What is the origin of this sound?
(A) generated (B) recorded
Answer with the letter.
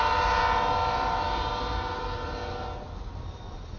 B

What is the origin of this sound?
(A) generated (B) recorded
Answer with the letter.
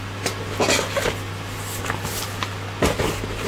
B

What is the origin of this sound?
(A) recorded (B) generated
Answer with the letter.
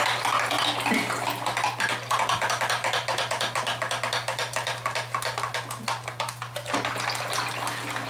A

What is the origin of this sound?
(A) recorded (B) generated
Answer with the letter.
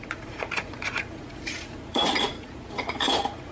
B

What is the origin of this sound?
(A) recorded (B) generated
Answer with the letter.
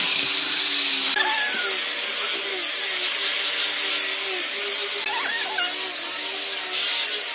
A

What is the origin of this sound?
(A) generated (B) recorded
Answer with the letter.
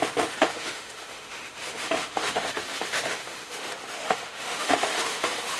A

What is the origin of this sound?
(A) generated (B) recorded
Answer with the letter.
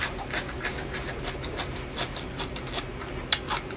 B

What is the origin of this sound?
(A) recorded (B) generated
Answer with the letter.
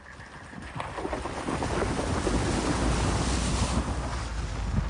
A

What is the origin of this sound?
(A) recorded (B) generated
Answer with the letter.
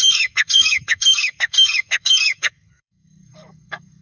B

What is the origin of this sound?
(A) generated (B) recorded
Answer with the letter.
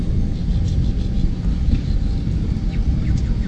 B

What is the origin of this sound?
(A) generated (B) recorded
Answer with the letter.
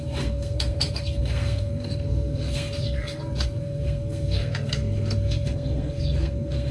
A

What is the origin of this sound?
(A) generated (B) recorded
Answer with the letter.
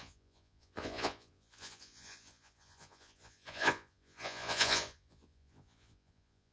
A